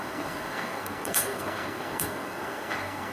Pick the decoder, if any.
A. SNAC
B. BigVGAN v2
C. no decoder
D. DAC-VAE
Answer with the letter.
A